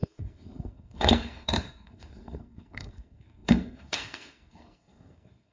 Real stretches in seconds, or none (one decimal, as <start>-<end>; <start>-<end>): none